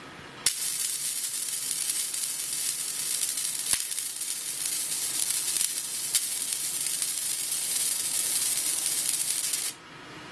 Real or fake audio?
real